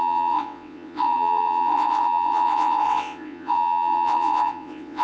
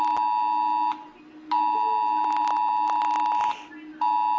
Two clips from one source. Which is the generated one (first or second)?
first